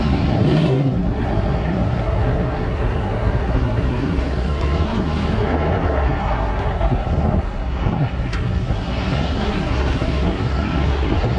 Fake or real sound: fake